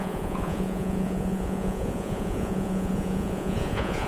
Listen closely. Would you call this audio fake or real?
fake